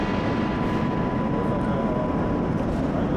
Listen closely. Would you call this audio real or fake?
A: real